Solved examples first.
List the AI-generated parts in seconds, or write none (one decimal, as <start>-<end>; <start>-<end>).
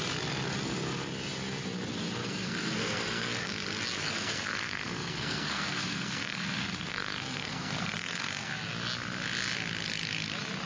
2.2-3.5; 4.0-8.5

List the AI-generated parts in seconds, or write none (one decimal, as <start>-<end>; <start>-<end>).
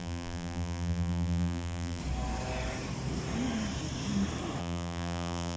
0.0-2.0; 4.6-5.6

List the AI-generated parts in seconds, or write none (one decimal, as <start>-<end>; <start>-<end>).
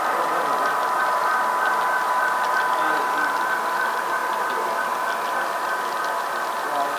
4.2-4.8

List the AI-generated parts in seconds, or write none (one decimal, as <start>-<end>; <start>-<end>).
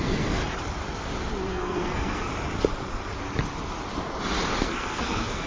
0.0-0.4; 1.5-2.3; 4.6-5.5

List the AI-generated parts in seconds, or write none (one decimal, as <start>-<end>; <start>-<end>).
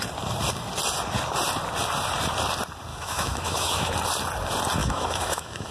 2.9-3.9; 4.8-5.7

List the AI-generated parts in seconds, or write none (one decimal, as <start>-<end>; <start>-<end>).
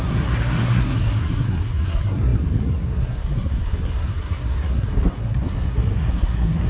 0.0-6.7